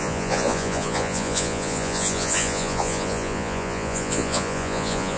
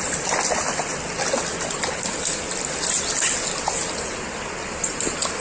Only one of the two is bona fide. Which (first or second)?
second